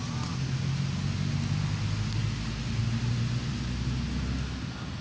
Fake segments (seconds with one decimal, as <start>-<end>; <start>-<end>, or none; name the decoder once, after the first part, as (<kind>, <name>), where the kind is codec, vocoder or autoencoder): none